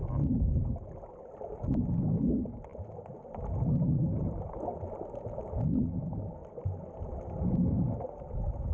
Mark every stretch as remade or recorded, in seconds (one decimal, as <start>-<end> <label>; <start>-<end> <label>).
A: 0.0-8.7 recorded